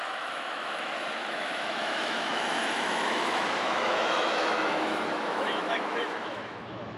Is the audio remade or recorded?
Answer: remade